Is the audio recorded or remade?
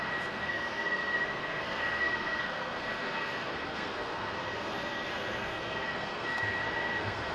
remade